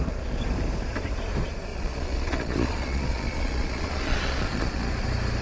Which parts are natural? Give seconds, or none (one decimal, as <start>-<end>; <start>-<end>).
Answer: 0.0-1.7; 4.9-5.4